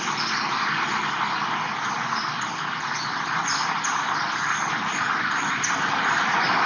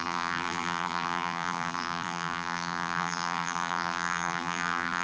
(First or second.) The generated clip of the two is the second